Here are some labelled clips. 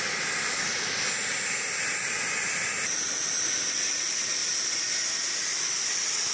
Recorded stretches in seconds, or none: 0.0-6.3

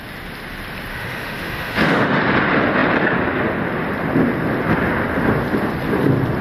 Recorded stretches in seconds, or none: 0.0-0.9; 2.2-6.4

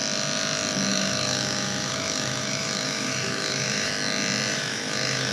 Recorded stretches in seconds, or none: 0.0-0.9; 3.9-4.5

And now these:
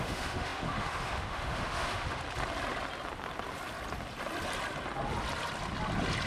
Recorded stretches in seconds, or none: 2.2-6.3